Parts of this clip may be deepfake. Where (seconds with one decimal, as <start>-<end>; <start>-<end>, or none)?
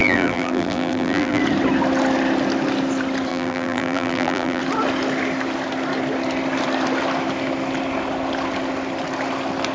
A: 0.0-1.4; 3.3-4.6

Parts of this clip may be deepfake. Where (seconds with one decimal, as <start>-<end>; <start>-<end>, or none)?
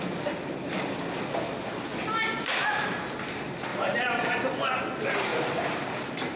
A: 3.7-4.3; 5.3-6.4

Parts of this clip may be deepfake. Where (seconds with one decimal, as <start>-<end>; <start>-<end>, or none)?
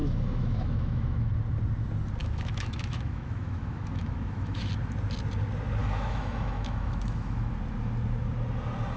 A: 0.0-1.3; 2.2-4.7; 5.8-7.5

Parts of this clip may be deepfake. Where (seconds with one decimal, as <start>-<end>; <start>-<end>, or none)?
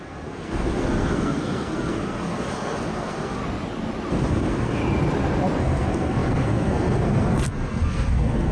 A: 0.0-3.4; 4.1-4.8; 5.6-8.5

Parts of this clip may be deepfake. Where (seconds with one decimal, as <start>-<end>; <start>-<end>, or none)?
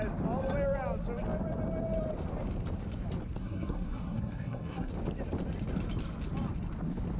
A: 3.4-4.9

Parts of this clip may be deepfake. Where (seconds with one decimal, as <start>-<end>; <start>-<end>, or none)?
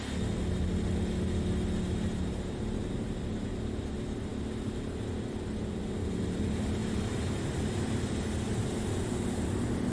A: none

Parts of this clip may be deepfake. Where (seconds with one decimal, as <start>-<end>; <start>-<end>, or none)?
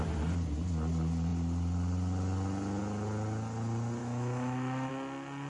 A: 4.0-4.9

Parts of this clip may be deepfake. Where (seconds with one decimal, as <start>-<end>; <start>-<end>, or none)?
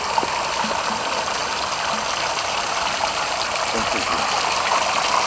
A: none